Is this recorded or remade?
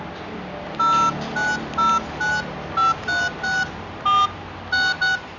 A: recorded